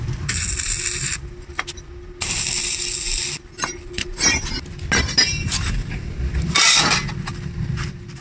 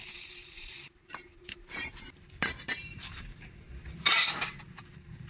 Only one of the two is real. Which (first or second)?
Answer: first